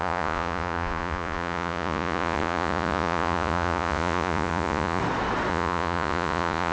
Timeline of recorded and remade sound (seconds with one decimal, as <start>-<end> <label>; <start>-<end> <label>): 0.0-5.0 remade; 5.0-5.5 recorded; 5.5-6.7 remade